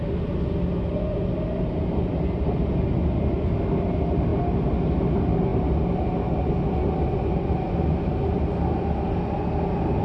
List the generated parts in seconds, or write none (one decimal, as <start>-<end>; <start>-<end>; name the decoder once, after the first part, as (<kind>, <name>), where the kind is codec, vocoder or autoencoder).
none